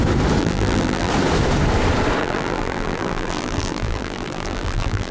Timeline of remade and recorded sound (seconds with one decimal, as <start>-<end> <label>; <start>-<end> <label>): 0.0-0.4 recorded; 0.4-1.1 remade; 1.1-2.2 recorded; 2.2-5.1 remade